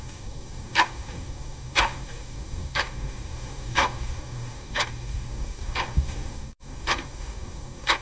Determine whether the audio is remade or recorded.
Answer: remade